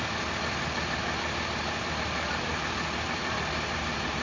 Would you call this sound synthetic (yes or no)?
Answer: yes